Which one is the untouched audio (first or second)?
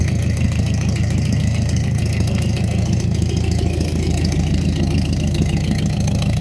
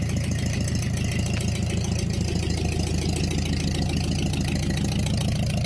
second